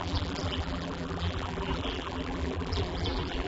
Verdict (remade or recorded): remade